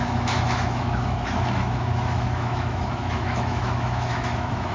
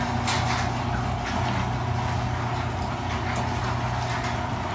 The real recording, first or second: second